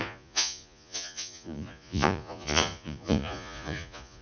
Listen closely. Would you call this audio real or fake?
fake